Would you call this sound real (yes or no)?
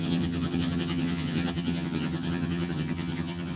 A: no